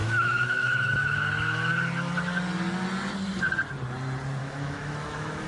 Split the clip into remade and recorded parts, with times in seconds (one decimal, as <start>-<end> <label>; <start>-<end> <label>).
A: 0.0-1.7 remade; 1.7-4.4 recorded; 4.4-5.5 remade